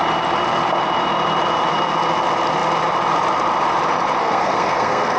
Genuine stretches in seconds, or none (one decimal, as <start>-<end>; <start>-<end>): 0.0-4.2